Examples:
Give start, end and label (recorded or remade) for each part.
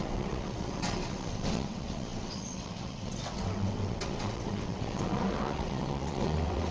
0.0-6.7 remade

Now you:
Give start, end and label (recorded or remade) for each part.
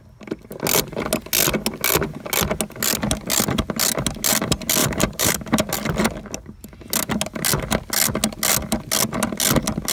0.0-4.8 recorded; 4.8-5.6 remade; 5.6-9.9 recorded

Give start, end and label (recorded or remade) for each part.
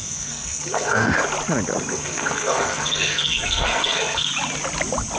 0.0-1.2 remade; 1.2-1.9 recorded; 1.9-4.3 remade; 4.3-5.2 recorded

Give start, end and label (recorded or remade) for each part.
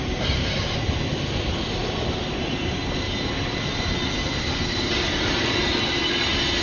0.0-6.6 recorded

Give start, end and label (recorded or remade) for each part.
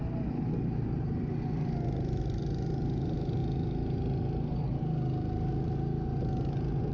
0.0-6.9 recorded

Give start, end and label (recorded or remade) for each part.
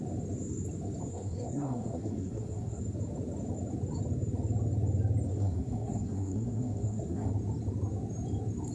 0.0-1.1 recorded; 1.1-2.8 remade; 2.8-5.3 recorded; 5.3-7.3 remade; 7.3-8.7 recorded